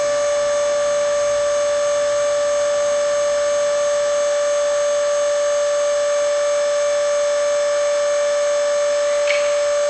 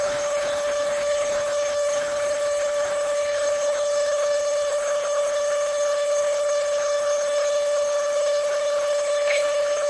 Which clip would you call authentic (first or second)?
first